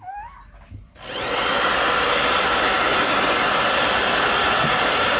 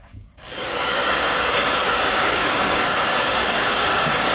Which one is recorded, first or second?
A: first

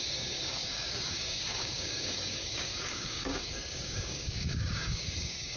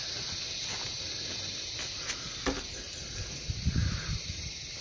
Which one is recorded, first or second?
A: second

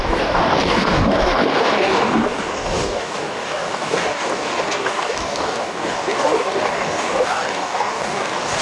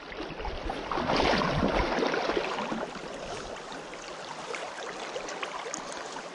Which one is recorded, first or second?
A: second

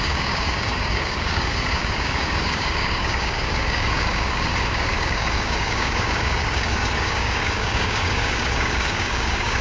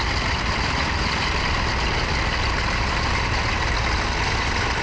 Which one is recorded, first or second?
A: second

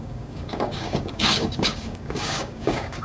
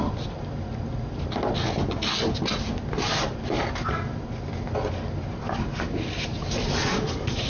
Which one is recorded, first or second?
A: second